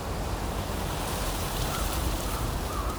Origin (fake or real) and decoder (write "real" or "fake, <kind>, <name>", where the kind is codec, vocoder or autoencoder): fake, vocoder, BigVGAN v2